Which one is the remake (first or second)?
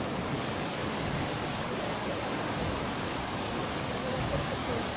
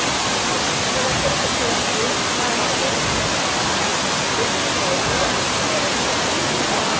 first